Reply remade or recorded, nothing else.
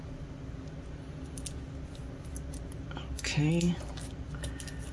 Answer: recorded